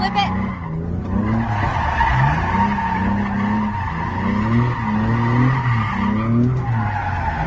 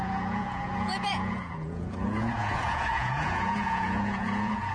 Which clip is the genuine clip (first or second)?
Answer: first